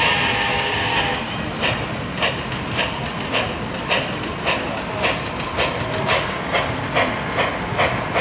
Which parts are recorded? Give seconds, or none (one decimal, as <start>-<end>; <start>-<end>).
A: 0.0-0.5; 1.0-6.1; 6.7-8.2